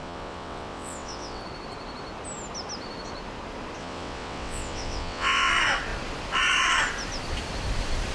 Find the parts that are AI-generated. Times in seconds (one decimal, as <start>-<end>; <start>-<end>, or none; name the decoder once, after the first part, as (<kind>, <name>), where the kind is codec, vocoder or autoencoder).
0.0-1.4 (vocoder, WaveNeXt); 3.8-5.5